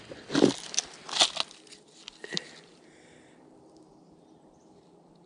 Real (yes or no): yes